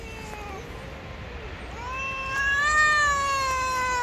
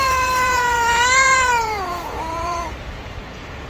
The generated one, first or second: second